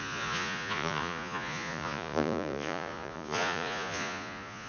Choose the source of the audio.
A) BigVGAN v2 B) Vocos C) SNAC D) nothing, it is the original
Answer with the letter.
B